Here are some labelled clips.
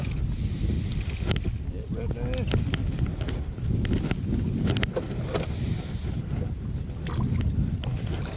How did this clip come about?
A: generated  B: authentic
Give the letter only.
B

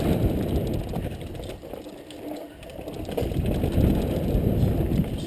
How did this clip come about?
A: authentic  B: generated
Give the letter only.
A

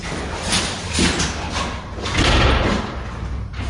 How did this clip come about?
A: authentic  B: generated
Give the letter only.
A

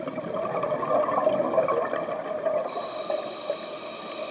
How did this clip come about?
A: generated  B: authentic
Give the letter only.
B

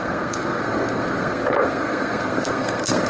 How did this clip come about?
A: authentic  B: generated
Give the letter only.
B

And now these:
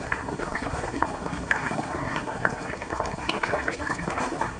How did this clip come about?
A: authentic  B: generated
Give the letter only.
B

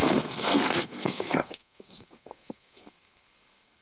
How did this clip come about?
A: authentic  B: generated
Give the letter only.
B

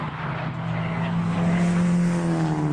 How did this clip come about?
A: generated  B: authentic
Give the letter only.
B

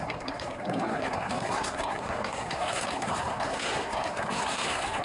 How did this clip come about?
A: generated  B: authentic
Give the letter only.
A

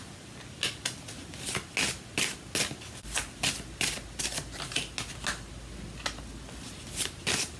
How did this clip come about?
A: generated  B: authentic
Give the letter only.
B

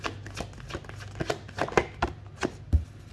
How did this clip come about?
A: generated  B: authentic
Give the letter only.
B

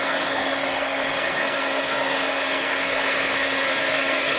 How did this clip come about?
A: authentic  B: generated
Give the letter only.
B